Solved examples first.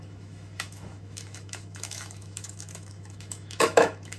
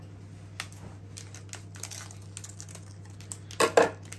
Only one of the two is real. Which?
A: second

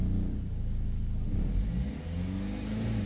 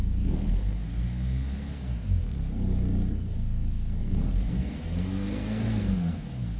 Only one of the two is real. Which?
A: first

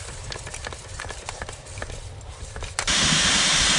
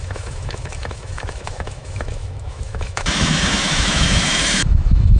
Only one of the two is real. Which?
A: first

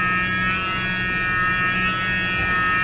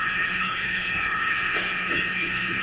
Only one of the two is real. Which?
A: first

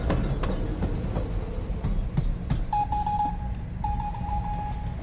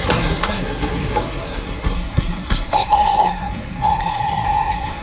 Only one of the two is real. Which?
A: first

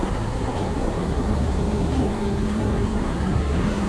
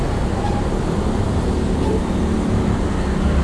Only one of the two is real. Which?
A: second